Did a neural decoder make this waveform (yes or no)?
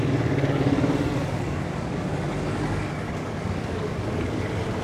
yes